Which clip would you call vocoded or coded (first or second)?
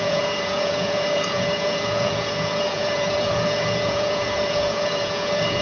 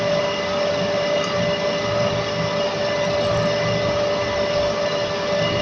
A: first